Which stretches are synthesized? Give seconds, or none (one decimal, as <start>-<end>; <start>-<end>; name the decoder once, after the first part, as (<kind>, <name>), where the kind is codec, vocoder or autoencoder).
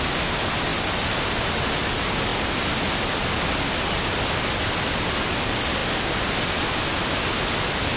none